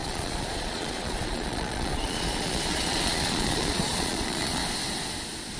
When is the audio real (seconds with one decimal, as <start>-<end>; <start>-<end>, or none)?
4.6-5.6